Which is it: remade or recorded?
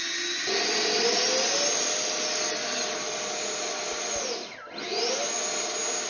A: recorded